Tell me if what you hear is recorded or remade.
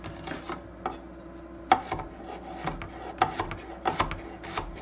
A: recorded